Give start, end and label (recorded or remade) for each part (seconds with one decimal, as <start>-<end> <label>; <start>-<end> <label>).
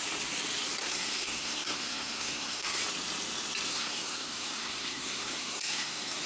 0.0-0.8 recorded; 0.8-2.8 remade; 2.8-3.7 recorded; 3.7-6.3 remade